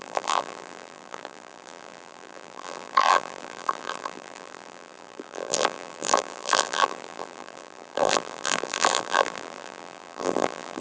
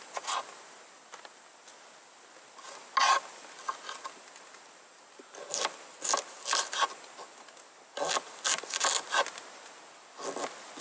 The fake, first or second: first